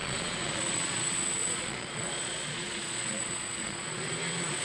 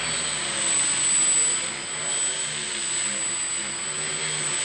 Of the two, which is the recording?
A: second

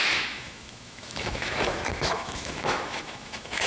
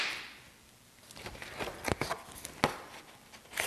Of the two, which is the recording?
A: second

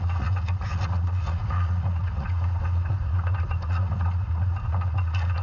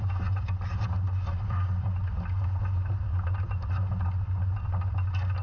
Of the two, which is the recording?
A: second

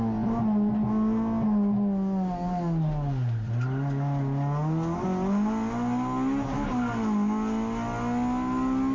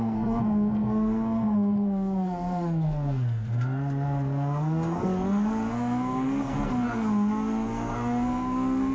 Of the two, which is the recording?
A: first